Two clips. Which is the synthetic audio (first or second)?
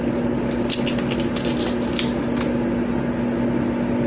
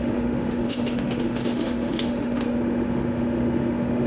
second